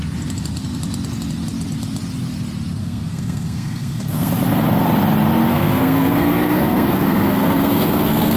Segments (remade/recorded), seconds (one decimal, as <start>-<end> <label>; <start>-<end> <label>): 0.0-2.8 recorded; 2.8-4.3 remade; 4.3-5.5 recorded; 5.5-8.4 remade